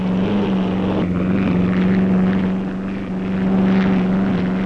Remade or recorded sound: recorded